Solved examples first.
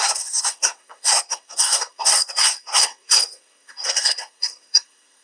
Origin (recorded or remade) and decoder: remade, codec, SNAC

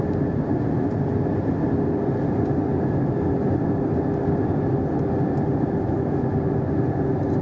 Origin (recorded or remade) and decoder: recorded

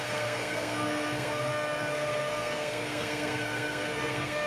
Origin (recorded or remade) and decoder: remade, codec, SNAC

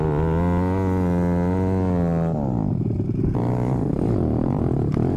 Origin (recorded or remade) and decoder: recorded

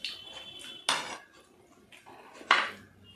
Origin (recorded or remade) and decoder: recorded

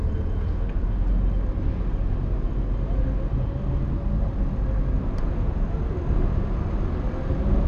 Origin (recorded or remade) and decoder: recorded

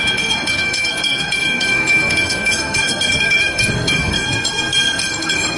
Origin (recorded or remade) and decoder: remade, codec, SNAC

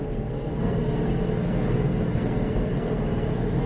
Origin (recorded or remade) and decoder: remade, codec, SNAC